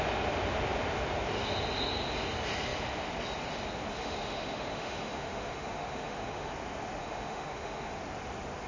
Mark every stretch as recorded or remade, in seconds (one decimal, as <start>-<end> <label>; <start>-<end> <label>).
0.0-3.9 recorded; 3.9-6.5 remade; 6.5-7.0 recorded; 7.0-8.0 remade; 8.0-8.7 recorded